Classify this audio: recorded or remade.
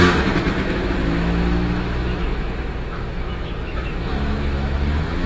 remade